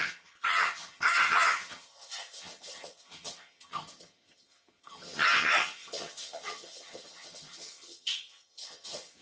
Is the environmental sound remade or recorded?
remade